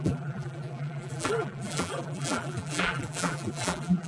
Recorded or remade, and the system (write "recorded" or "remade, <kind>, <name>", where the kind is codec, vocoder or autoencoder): remade, vocoder, BigVGAN v2